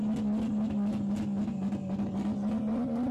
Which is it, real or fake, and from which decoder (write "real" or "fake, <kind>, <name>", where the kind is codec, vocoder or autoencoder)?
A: real